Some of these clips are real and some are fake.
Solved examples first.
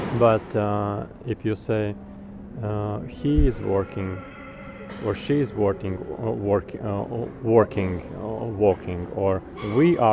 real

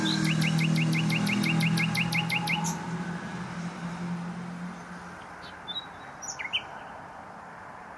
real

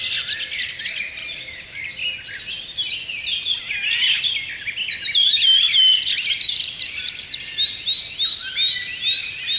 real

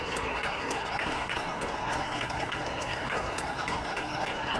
fake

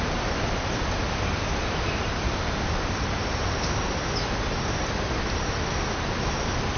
real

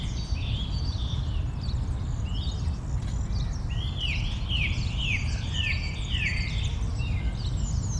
real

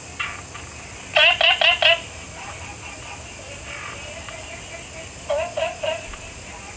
real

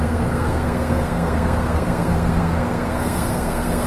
fake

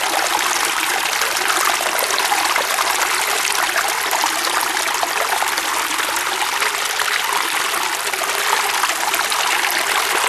real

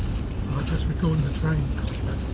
real